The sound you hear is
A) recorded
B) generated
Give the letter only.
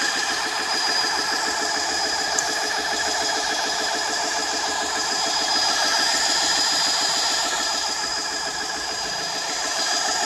B